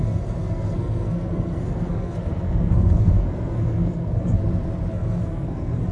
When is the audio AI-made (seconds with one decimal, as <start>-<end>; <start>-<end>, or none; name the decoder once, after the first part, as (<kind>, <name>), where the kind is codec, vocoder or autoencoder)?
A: 0.0-4.4 (codec, SNAC); 4.9-5.9